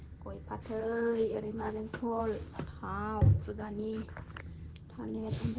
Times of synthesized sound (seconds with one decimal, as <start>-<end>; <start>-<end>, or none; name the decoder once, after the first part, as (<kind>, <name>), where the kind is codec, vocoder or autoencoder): 0.8-2.2 (codec, HILCodec); 3.4-4.1; 4.7-5.6